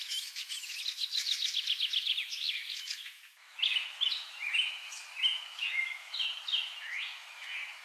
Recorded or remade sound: remade